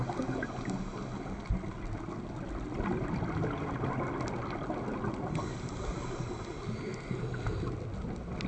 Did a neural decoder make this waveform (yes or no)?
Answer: no